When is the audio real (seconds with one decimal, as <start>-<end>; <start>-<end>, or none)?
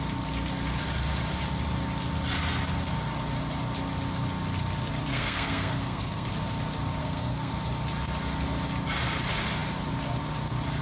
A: 0.0-5.1; 6.3-7.0; 7.5-10.8